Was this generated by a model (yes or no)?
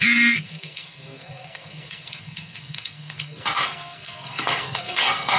yes